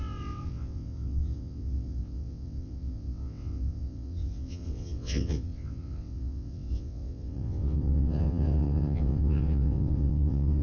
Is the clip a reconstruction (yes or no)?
yes